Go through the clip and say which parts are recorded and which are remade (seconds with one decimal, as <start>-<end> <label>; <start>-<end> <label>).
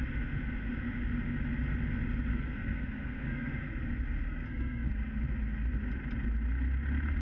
0.0-2.3 recorded; 2.3-3.5 remade; 3.5-4.3 recorded; 4.3-4.9 remade; 4.9-7.2 recorded